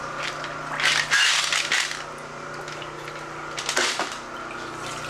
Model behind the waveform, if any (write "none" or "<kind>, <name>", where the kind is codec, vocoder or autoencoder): none